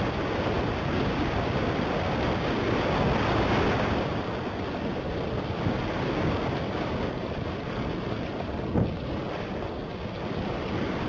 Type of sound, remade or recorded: recorded